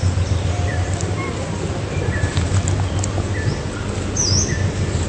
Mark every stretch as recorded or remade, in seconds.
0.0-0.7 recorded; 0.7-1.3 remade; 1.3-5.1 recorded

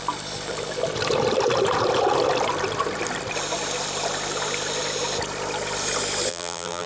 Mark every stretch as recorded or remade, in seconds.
0.0-6.3 recorded; 6.3-6.9 remade

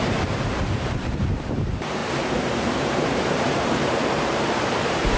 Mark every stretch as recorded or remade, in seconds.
0.0-5.2 remade

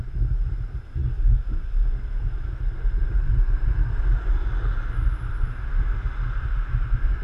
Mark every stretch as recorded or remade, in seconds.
0.0-3.0 recorded; 3.0-5.6 remade; 5.6-7.2 recorded